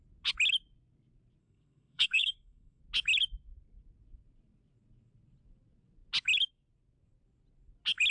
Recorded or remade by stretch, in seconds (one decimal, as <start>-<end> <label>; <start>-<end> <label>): 0.0-1.4 recorded; 1.4-2.8 remade; 2.8-8.1 recorded